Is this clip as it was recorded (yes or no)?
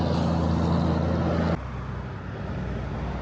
yes